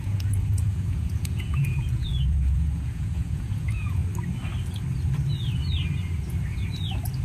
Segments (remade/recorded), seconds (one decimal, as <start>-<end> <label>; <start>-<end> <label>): 0.0-4.0 remade; 4.0-7.2 recorded